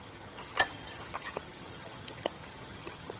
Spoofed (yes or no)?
yes